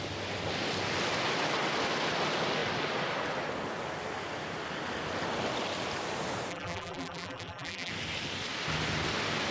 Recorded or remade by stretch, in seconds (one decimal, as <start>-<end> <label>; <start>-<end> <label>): 0.0-6.5 recorded; 6.5-7.9 remade; 7.9-9.5 recorded